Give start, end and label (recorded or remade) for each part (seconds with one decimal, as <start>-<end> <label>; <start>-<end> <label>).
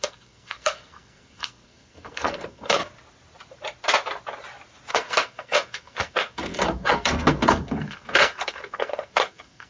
0.0-2.8 remade; 2.8-4.9 recorded; 4.9-9.7 remade